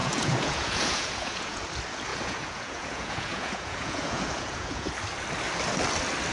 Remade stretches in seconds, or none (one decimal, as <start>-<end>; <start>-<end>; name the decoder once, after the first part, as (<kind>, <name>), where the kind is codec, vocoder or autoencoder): 0.0-1.6 (vocoder, Vocos); 2.1-4.9